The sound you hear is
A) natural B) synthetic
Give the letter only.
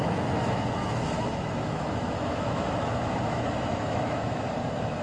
B